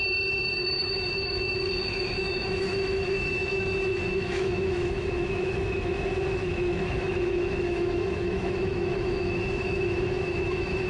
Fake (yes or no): yes